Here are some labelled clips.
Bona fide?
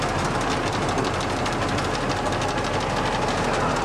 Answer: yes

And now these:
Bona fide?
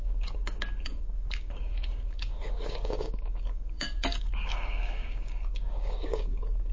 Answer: no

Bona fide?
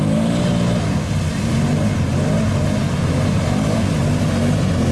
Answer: yes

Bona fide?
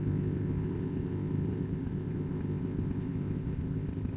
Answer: no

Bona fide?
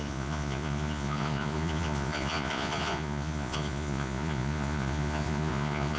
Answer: no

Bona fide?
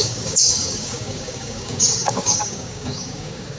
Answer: no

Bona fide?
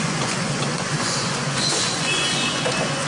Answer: no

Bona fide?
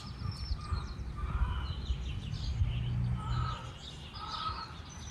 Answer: yes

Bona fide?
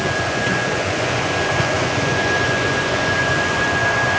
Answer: no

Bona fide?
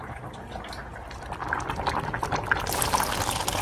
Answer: yes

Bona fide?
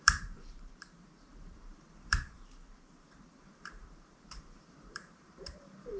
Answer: no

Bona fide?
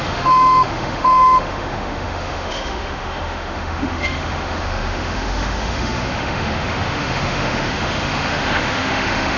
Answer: no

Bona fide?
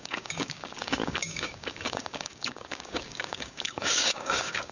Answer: no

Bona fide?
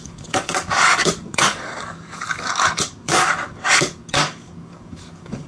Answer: no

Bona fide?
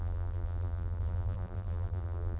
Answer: no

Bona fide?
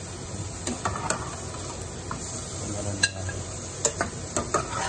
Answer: yes